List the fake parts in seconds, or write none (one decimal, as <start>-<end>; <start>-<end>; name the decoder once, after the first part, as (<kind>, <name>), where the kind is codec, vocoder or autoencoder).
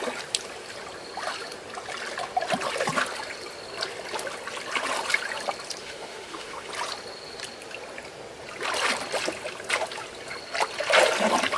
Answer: 5.8-6.7 (autoencoder, DAC-VAE)